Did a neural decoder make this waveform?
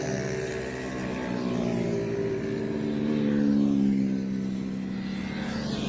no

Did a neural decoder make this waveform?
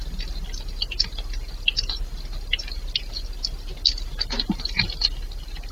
no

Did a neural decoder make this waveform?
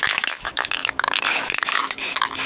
yes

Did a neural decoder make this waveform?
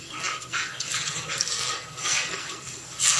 yes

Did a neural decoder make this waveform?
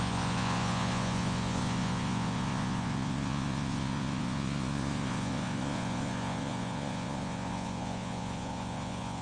yes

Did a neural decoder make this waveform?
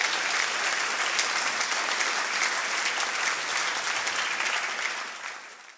no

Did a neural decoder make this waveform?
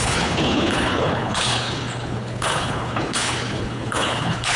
yes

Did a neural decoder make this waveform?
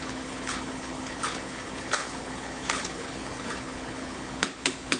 yes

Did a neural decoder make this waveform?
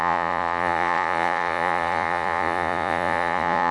yes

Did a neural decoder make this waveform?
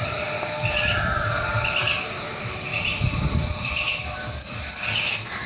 no